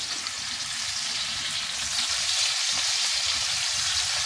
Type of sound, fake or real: fake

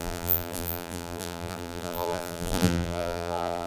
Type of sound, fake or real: fake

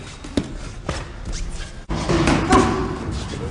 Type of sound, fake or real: real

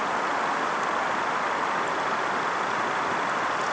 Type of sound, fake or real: real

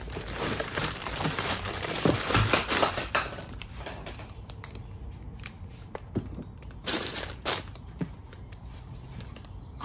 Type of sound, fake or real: fake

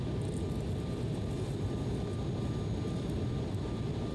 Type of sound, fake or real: real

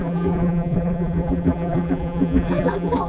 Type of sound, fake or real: fake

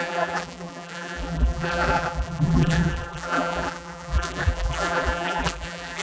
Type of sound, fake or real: fake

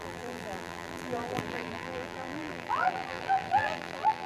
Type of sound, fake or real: fake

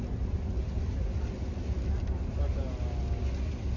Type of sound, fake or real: real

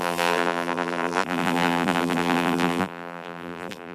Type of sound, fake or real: fake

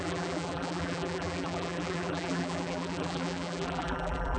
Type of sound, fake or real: fake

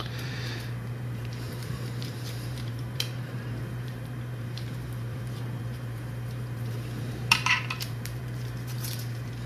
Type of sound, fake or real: fake